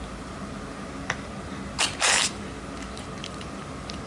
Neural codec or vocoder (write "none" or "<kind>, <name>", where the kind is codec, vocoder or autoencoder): none